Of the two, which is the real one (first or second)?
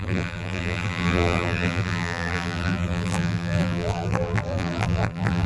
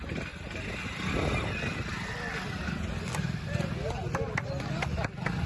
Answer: second